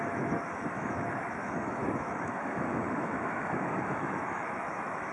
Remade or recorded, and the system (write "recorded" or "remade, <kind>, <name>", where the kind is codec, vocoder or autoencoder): remade, autoencoder, DAC-VAE